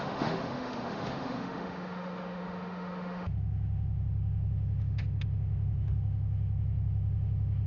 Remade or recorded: remade